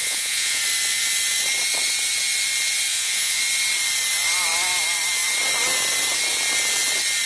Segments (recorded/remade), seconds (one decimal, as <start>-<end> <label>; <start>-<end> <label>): 0.0-0.6 remade; 0.6-2.9 recorded; 2.9-3.4 remade; 3.4-7.3 recorded